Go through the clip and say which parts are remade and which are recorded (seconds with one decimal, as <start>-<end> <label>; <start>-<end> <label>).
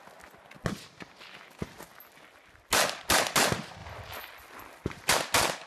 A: 0.0-5.7 recorded